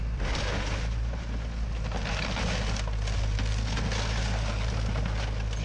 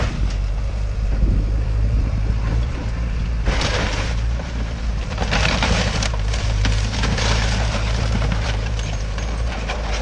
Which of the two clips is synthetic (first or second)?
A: second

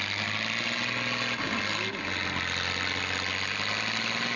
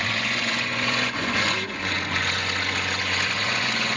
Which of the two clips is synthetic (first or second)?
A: second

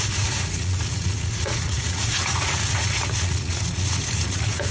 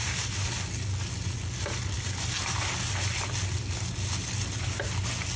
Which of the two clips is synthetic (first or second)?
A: first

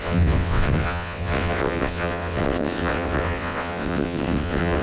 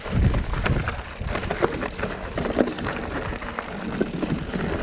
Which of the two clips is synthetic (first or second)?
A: first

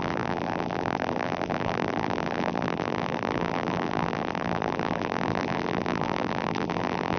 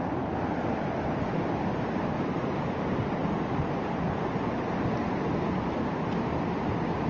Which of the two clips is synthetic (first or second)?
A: first